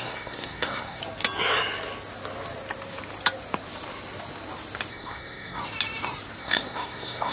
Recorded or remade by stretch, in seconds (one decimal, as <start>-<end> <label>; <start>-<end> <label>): 0.0-1.0 remade; 1.0-4.9 recorded; 4.9-5.6 remade; 5.6-6.4 recorded; 6.4-7.3 remade